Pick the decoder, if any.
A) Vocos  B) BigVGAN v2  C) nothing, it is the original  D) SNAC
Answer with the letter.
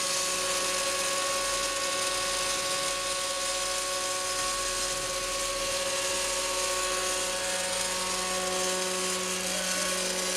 C